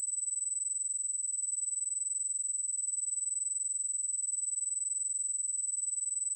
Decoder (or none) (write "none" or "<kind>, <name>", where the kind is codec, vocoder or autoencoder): vocoder, BigVGAN v2